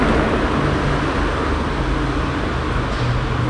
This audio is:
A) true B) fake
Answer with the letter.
A